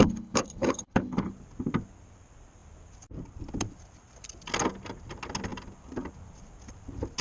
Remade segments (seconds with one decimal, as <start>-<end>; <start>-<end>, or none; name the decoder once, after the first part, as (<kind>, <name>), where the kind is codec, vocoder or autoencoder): 0.0-1.3 (codec, HILCodec)